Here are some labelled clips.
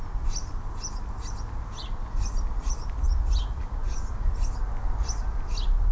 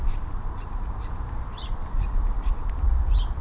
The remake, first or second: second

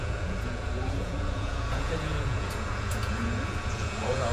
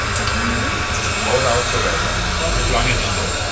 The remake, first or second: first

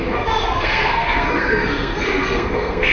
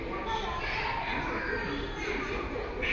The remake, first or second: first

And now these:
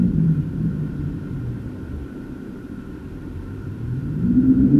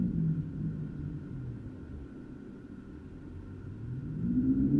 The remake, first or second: first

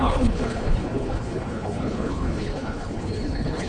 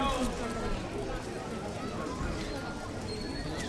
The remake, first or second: first